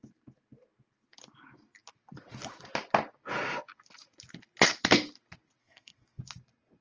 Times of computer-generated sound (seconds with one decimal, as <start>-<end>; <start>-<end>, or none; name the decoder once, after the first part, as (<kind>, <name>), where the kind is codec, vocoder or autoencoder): 5.6-6.2 (codec, SNAC)